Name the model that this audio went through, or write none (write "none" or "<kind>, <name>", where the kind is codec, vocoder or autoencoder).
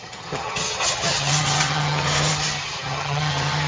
vocoder, HiFi-GAN